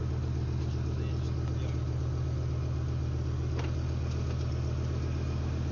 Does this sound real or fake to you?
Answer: real